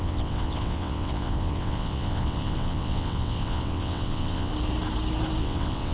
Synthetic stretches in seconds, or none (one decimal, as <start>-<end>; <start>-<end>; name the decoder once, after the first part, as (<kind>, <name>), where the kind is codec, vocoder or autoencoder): 0.0-4.5 (vocoder, WaveNeXt); 5.4-5.9